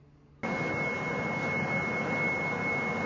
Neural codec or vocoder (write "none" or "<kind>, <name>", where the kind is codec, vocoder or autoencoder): none